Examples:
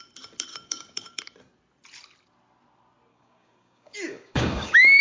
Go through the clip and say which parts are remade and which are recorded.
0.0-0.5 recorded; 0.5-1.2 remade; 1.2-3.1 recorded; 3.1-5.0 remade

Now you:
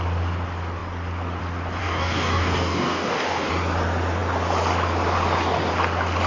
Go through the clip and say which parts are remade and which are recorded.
0.0-1.8 recorded; 1.8-3.5 remade; 3.5-6.3 recorded